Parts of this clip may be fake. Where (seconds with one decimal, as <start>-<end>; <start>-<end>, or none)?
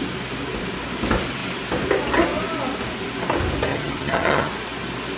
3.7-4.5